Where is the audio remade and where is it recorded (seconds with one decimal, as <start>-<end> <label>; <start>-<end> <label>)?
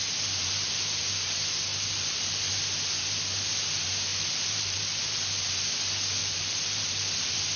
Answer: 0.0-1.7 recorded; 1.7-2.5 remade; 2.5-4.1 recorded; 4.1-5.2 remade; 5.2-6.2 recorded; 6.2-7.6 remade